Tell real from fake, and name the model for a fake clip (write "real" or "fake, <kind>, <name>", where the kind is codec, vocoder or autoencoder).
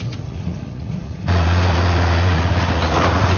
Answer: fake, vocoder, Vocos